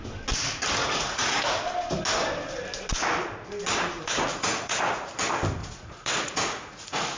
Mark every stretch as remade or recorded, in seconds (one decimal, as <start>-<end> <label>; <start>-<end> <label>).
0.0-0.8 recorded; 0.8-1.4 remade; 1.4-4.3 recorded; 4.3-5.1 remade; 5.1-5.6 recorded; 5.6-7.2 remade